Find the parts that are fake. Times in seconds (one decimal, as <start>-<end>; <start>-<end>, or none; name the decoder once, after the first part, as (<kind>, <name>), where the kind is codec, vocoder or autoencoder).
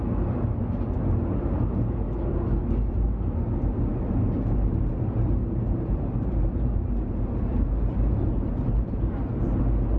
3.9-4.4 (vocoder, BigVGAN v2); 5.4-9.4